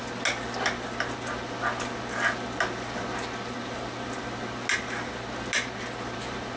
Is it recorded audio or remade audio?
recorded